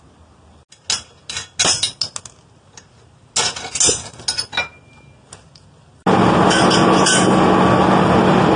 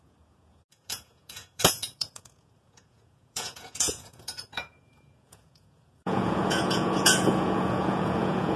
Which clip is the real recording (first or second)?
first